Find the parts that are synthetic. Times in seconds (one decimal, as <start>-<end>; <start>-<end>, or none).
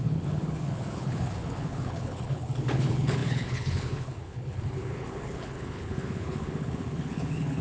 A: 0.0-7.6